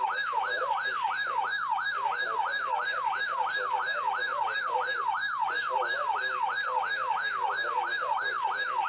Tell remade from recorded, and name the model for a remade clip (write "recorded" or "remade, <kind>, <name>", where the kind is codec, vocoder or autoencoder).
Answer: recorded